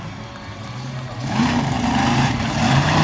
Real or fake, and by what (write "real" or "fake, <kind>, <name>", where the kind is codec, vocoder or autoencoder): fake, vocoder, BigVGAN v2